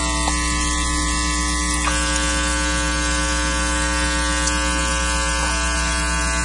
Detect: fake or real real